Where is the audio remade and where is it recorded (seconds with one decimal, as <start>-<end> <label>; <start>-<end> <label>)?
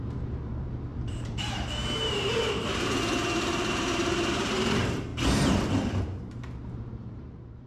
0.0-5.1 remade; 5.1-6.2 recorded; 6.2-7.7 remade